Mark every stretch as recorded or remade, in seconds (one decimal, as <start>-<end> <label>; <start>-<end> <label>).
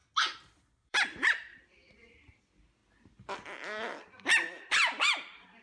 0.0-0.8 recorded; 0.8-2.8 remade; 2.8-4.7 recorded; 4.7-5.6 remade